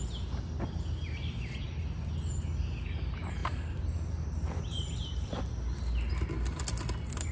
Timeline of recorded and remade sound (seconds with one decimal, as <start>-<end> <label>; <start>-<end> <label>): 0.0-3.4 recorded; 3.4-5.4 remade; 5.4-7.3 recorded